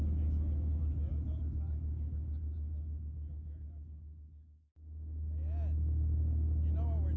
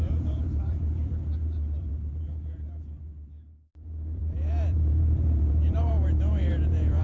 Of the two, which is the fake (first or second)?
second